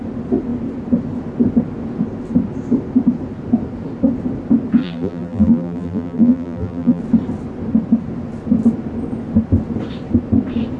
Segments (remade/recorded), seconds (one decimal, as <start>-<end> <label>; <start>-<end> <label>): 0.0-4.8 recorded; 4.8-7.0 remade; 7.0-10.8 recorded